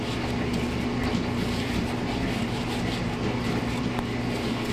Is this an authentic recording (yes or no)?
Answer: yes